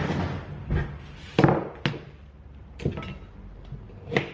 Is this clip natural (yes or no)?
yes